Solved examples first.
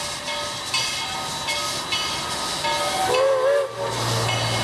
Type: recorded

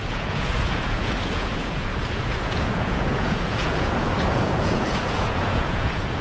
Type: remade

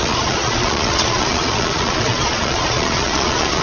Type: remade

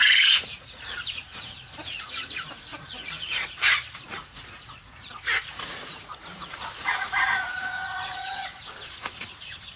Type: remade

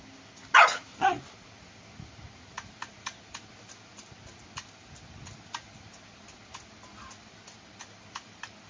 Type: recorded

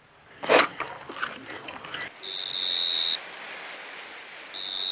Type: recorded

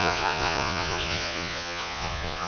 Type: remade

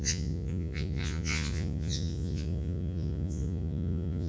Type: remade